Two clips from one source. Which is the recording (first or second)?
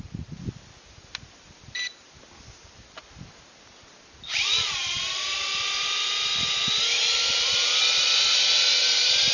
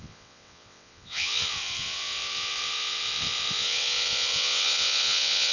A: first